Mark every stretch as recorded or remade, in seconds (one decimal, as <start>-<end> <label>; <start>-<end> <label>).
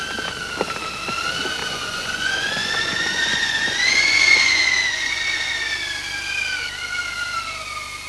0.0-1.6 recorded; 1.6-5.5 remade; 5.5-8.1 recorded